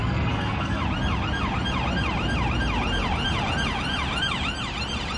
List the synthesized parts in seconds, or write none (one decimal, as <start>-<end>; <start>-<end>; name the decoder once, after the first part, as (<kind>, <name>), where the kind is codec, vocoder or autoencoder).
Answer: 0.0-0.8 (codec, SNAC)